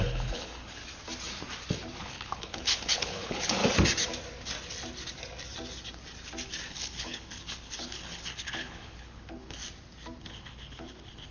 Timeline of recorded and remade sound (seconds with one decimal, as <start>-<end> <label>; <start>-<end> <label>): 0.0-0.8 remade; 0.8-2.0 recorded; 2.0-3.6 remade; 3.6-6.7 recorded; 6.7-9.6 remade; 9.6-10.2 recorded; 10.2-11.3 remade